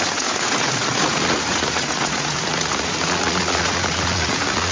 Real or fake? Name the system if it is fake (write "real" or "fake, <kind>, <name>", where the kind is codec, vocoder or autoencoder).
fake, vocoder, Vocos